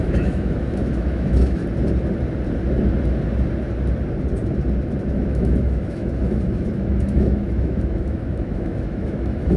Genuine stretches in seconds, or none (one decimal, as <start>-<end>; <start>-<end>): 1.6-5.1